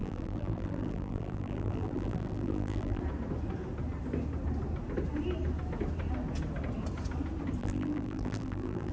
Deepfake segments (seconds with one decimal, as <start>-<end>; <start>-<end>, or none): 0.0-3.0; 7.6-8.9